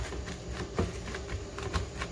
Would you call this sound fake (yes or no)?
no